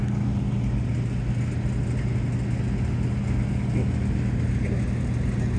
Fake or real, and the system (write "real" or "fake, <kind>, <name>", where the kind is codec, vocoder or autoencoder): real